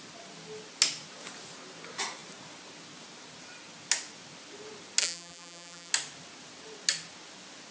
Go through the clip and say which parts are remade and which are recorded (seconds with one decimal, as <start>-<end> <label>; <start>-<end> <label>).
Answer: 0.0-5.0 recorded; 5.0-5.9 remade; 5.9-7.7 recorded

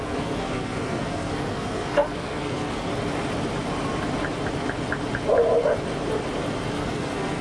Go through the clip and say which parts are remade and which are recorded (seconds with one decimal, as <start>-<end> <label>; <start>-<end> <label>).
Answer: 0.0-2.9 remade; 2.9-6.7 recorded; 6.7-7.4 remade

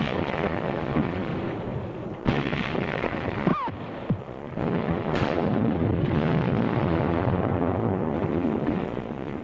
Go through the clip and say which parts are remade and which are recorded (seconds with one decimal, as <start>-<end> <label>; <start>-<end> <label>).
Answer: 0.0-1.3 remade; 1.3-2.2 recorded; 2.2-3.5 remade; 3.5-4.2 recorded; 4.2-9.4 remade

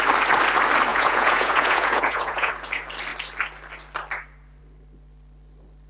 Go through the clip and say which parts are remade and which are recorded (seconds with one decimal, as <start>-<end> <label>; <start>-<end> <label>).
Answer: 0.0-0.9 recorded; 0.9-2.5 remade; 2.5-5.9 recorded

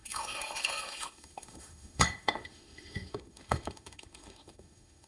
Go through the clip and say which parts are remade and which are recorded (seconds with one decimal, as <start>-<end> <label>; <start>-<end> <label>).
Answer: 0.0-5.1 remade

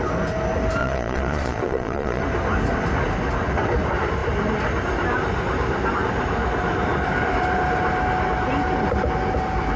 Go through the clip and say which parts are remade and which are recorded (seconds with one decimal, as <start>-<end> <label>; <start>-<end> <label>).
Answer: 0.0-0.8 recorded; 0.8-2.2 remade; 2.2-9.8 recorded

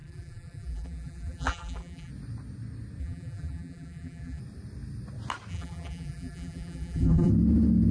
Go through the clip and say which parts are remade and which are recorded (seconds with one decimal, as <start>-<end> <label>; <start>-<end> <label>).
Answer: 0.0-2.1 remade; 2.1-3.0 recorded; 3.0-4.4 remade; 4.4-5.5 recorded; 5.5-7.3 remade; 7.3-7.9 recorded

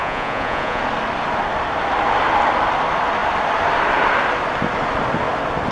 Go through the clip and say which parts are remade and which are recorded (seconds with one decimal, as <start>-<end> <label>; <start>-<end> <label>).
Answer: 0.0-0.8 remade; 0.8-5.7 recorded